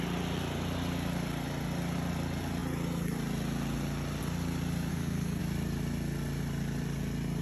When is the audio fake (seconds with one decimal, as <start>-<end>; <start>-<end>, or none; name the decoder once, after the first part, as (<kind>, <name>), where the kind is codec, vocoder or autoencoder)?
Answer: 4.9-5.4 (codec, SNAC)